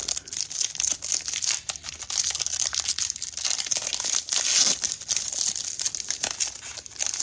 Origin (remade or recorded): recorded